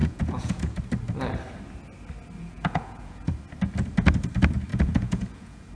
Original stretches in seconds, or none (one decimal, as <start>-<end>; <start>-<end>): 0.8-2.4; 3.3-4.7